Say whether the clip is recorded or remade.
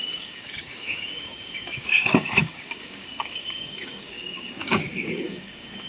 remade